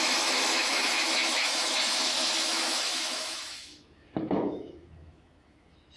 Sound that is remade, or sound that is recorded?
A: remade